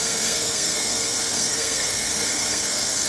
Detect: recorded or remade remade